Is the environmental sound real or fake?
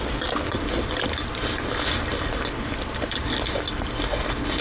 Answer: real